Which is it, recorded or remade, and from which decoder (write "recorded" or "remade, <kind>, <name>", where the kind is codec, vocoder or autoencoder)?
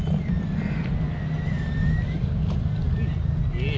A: recorded